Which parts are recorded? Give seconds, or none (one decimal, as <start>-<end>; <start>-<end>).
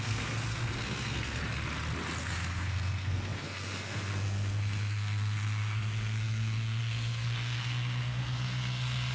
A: 1.4-2.2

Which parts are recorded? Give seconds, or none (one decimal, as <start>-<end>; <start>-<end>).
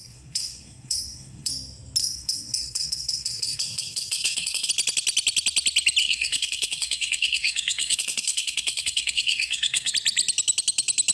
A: 1.5-2.0; 4.7-6.0; 9.9-11.1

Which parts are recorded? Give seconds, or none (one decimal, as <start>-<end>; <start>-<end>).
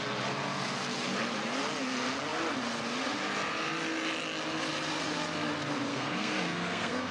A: 0.0-5.9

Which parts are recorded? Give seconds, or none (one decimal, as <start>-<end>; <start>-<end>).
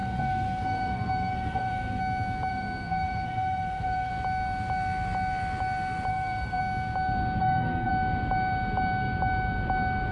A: 2.0-2.5; 4.1-6.1; 6.6-7.4; 7.9-10.1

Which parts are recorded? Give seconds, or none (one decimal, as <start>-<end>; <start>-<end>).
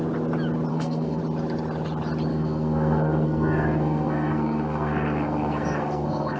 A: 0.0-0.7; 1.2-2.3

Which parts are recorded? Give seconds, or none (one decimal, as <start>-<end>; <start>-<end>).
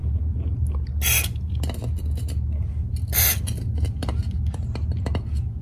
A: 0.0-5.6